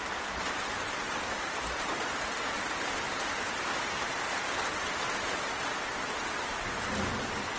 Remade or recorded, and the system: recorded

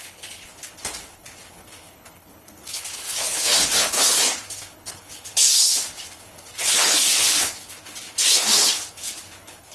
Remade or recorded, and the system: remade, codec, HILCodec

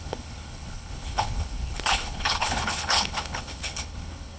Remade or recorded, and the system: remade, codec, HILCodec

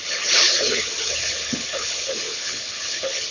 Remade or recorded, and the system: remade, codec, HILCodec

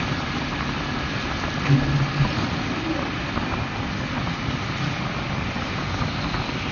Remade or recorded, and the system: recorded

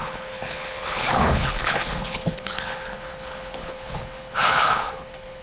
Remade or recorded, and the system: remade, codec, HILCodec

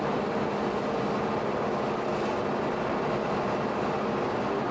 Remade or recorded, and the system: recorded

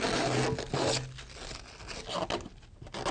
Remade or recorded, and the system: recorded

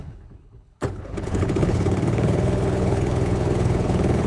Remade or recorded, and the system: remade, codec, HILCodec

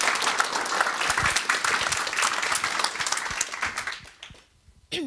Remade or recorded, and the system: recorded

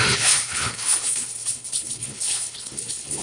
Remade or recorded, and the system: remade, codec, HILCodec